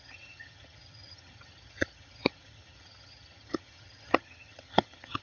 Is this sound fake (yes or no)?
yes